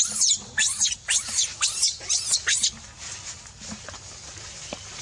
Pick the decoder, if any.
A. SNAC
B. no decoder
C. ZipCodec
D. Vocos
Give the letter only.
B